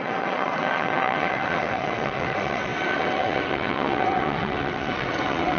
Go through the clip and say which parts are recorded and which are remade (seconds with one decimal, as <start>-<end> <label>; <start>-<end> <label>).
0.0-5.6 remade